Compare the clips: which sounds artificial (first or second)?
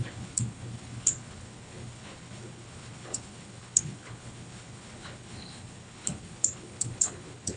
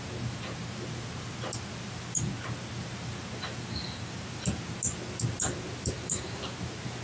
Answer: first